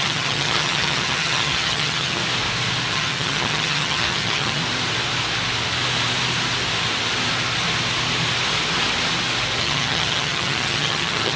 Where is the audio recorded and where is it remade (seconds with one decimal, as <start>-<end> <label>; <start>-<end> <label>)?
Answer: 0.0-2.2 remade; 2.2-2.9 recorded; 2.9-4.6 remade; 4.6-9.6 recorded; 9.6-11.4 remade